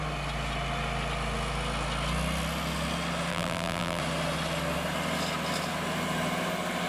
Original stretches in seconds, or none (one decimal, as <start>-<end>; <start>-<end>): 0.0-3.3; 4.0-6.9